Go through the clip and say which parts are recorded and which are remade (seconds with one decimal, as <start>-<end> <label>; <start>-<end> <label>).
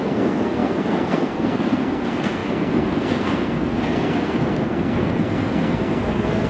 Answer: 0.0-6.5 remade